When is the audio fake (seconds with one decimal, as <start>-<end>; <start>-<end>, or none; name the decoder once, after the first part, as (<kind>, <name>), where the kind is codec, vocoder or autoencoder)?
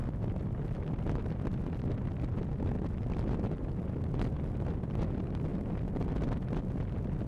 0.0-4.3 (vocoder, BigVGAN v2)